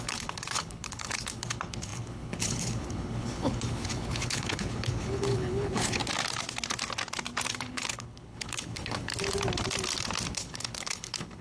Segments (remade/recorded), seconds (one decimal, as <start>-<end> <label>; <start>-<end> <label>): 0.0-6.0 remade; 6.0-7.5 recorded; 7.5-9.1 remade; 9.1-10.3 recorded; 10.3-11.4 remade